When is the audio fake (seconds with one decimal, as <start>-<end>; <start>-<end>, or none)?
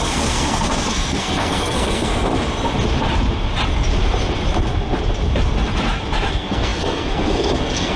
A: 0.0-2.3; 6.3-8.0